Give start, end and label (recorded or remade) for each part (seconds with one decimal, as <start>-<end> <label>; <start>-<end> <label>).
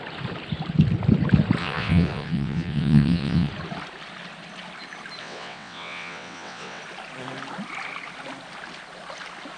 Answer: 0.0-1.6 recorded; 1.6-3.5 remade; 3.5-5.2 recorded; 5.2-6.8 remade; 6.8-9.6 recorded